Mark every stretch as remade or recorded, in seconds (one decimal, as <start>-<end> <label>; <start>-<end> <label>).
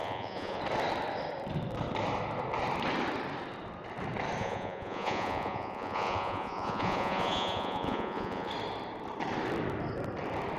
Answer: 0.0-0.6 remade; 0.6-4.4 recorded; 4.4-8.5 remade; 8.5-10.6 recorded